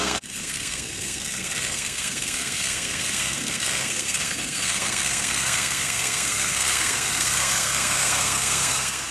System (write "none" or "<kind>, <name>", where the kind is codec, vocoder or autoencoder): codec, SNAC